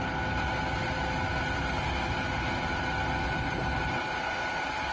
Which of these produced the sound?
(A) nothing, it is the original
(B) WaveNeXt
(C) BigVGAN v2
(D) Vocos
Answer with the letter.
A